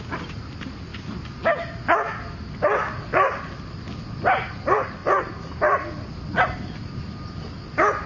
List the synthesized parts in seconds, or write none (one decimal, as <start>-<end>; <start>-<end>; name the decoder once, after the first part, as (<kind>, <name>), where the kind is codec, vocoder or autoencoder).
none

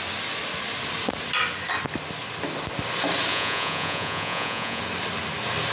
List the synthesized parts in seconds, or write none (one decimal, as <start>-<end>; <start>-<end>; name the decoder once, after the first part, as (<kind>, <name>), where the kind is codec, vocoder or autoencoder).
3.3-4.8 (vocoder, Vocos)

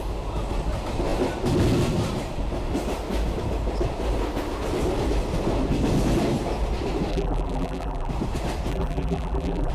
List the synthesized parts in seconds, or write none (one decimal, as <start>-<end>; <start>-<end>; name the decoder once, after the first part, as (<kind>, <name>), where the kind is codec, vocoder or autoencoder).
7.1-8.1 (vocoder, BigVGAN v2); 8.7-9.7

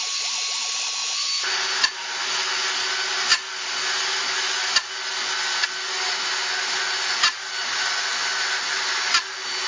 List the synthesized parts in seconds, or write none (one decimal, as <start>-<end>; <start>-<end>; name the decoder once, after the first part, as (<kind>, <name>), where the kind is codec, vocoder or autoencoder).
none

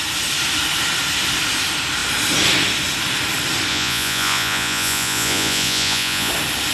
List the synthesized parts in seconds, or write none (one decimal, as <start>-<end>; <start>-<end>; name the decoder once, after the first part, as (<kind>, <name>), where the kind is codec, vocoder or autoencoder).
3.7-6.3 (vocoder, Vocos)

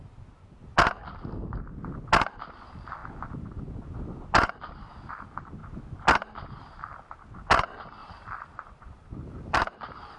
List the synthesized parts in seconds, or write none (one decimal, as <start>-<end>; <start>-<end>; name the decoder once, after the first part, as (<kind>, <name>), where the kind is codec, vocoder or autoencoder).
8.0-10.2 (vocoder, BigVGAN v2)

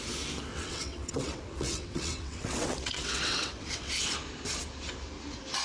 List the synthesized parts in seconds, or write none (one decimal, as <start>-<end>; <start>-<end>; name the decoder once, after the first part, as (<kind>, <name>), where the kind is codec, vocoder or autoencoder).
0.5-3.9 (vocoder, WaveNeXt)

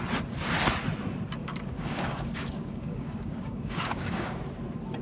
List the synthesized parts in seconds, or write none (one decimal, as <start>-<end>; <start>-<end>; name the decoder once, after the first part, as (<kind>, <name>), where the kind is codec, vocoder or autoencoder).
1.4-4.4 (codec, DAC)